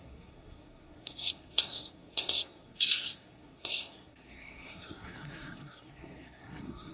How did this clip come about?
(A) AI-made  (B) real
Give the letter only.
A